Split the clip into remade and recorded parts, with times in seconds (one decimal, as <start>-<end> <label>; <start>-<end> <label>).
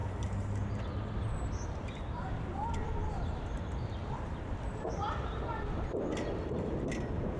0.0-7.4 recorded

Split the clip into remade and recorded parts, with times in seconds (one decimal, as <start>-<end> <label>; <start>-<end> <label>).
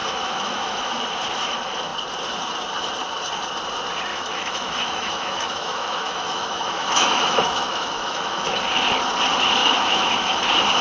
0.0-0.9 remade; 0.9-4.1 recorded; 4.1-8.6 remade; 8.6-9.6 recorded; 9.6-10.4 remade; 10.4-10.8 recorded